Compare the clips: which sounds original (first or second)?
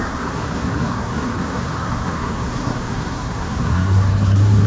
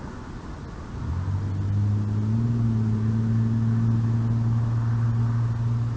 second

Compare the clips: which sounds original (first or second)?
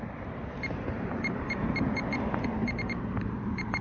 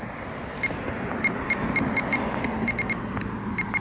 second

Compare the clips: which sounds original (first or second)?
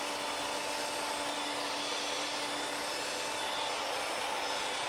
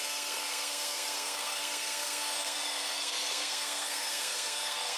first